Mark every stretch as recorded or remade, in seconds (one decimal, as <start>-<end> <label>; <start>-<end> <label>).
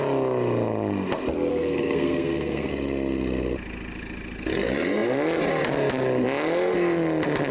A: 0.0-1.5 recorded; 1.5-2.7 remade; 2.7-7.5 recorded